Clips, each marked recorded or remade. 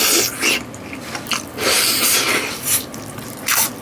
remade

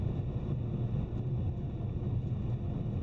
recorded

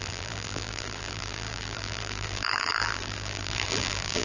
remade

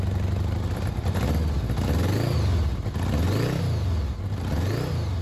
recorded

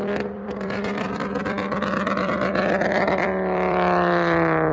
remade